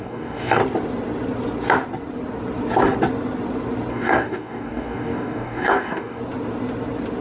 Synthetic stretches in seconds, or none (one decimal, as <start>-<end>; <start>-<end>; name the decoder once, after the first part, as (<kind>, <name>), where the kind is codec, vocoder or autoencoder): 0.0-0.6 (codec, DAC); 3.9-6.2